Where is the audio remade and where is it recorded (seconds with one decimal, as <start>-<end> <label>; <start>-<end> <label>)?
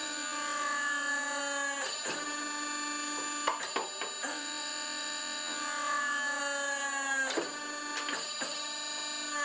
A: 0.0-1.4 remade; 1.4-4.3 recorded; 4.3-6.4 remade; 6.4-9.4 recorded